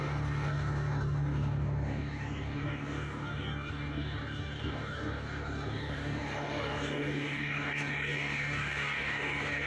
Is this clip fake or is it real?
fake